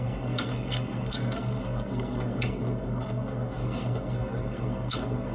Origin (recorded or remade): remade